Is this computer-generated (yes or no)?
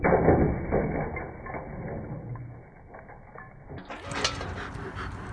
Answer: no